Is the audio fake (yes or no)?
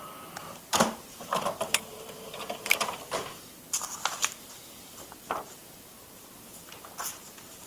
yes